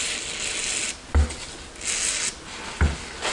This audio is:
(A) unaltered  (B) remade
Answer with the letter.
A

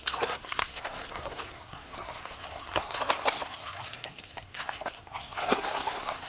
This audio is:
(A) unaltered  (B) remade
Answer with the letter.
B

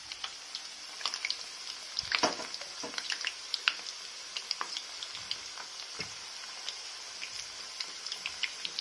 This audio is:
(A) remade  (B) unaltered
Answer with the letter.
B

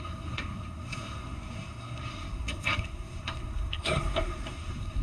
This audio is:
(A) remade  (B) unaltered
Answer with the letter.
A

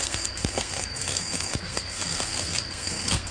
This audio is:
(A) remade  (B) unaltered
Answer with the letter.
A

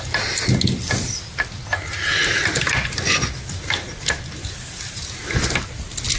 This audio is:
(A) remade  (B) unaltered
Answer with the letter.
B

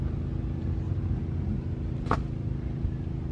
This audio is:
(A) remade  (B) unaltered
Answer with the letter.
B